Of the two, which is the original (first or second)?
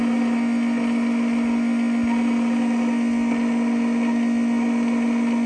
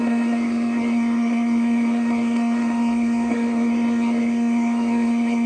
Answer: first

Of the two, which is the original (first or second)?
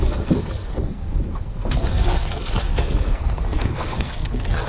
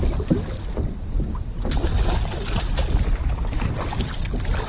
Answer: second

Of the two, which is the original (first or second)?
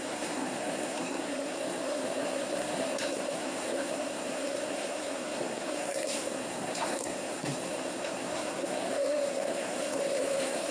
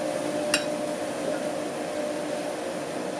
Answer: second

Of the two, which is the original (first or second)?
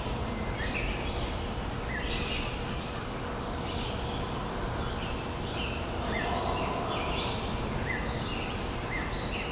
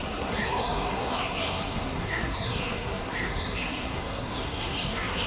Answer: first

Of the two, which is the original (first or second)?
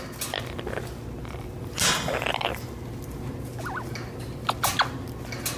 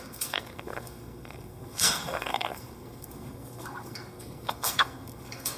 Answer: first